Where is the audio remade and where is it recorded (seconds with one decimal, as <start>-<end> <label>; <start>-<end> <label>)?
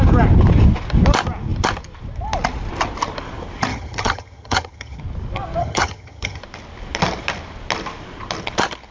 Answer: 0.0-3.7 recorded; 3.7-5.0 remade; 5.0-5.6 recorded; 5.6-6.4 remade; 6.4-8.9 recorded